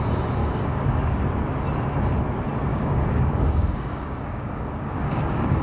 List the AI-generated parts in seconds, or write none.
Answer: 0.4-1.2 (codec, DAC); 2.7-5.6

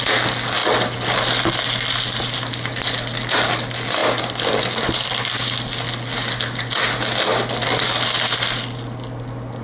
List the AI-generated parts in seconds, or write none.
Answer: none